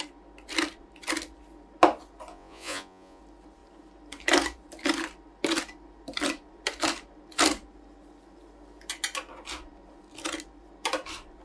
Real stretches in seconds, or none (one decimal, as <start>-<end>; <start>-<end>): 0.0-2.3; 3.2-11.4